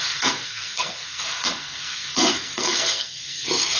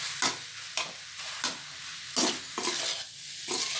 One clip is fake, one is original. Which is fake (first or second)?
first